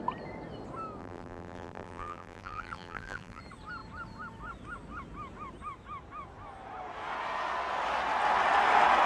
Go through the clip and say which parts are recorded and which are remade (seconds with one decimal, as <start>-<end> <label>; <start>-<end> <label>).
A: 0.0-1.0 recorded; 1.0-3.4 remade; 3.4-9.1 recorded